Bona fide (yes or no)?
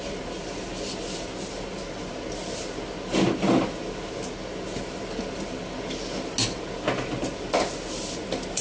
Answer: yes